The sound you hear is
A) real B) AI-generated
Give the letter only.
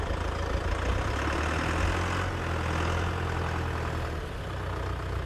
A